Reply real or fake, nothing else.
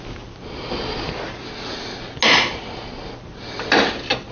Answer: real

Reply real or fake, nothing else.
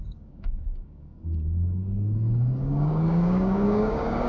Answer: fake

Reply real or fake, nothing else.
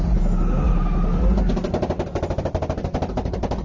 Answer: real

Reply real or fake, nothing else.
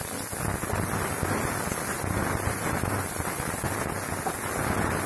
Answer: real